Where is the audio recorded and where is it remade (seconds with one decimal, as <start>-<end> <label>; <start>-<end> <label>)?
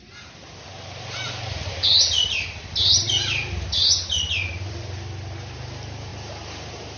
0.0-7.0 recorded